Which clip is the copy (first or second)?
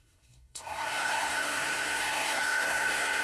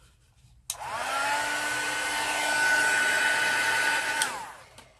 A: first